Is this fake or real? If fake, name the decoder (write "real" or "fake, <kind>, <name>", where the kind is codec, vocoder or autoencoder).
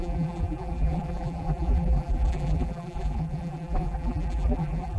fake, vocoder, BigVGAN v2